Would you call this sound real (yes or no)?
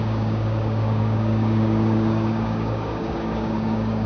no